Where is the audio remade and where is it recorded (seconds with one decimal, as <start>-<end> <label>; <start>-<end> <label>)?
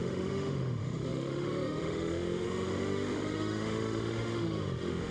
0.0-5.1 remade